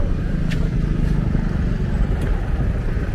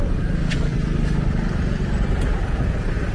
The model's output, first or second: first